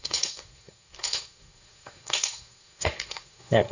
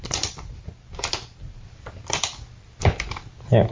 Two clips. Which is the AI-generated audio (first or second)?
first